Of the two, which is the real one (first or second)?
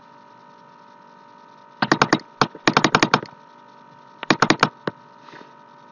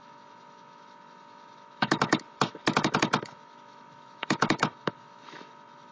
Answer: first